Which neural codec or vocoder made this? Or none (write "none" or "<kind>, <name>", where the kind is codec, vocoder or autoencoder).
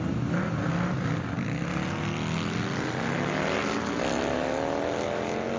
none